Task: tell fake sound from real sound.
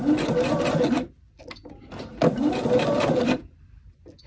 real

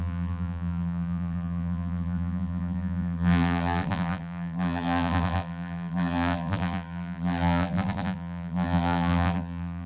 fake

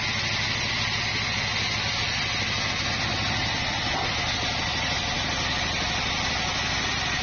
real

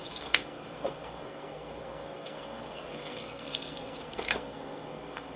fake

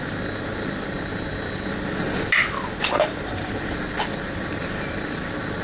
real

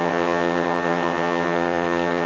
fake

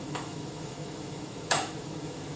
fake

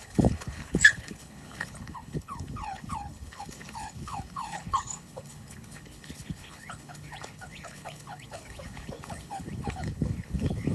fake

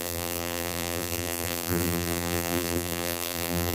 fake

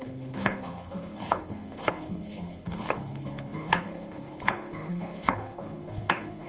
fake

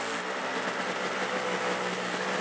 real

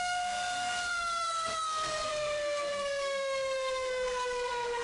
fake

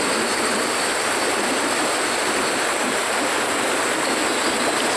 real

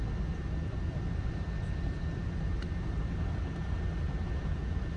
real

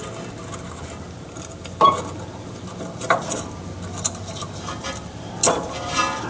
real